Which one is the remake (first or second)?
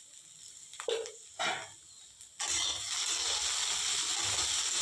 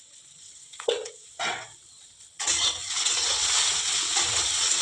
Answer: second